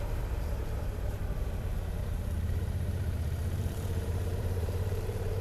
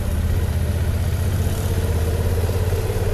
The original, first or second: second